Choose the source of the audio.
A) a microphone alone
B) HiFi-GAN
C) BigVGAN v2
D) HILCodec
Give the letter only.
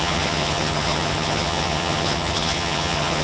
B